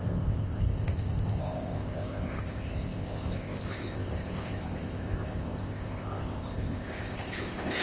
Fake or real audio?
fake